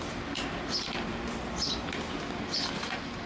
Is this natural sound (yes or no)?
yes